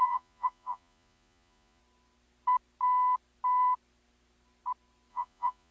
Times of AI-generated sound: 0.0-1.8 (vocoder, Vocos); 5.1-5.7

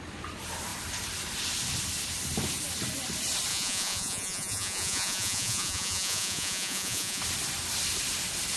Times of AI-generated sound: 3.5-7.2 (vocoder, Vocos)

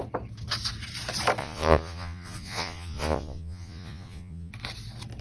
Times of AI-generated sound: 1.4-4.5 (vocoder, Vocos)

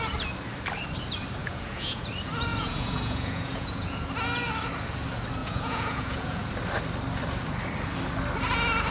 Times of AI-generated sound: 1.4-2.1 (vocoder, Vocos); 2.5-4.0; 5.4-6.5

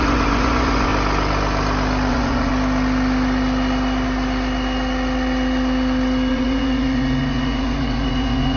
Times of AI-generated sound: 0.0-0.9 (vocoder, Vocos); 2.1-2.5; 6.3-8.6